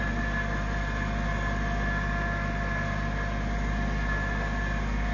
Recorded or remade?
recorded